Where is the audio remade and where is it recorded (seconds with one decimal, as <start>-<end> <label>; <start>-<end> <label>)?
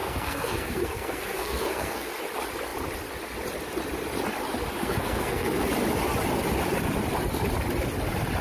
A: 0.0-2.1 remade; 2.1-4.8 recorded; 4.8-5.6 remade; 5.6-8.4 recorded